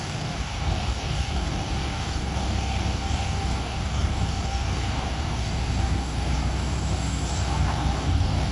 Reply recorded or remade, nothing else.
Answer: remade